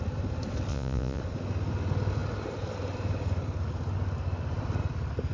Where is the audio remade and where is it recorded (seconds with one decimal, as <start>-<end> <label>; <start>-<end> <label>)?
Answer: 0.0-0.7 recorded; 0.7-1.2 remade; 1.2-5.3 recorded